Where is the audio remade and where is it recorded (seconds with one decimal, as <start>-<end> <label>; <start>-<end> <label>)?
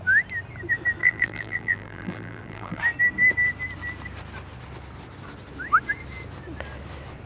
0.0-1.0 recorded; 1.0-2.8 remade; 2.8-7.3 recorded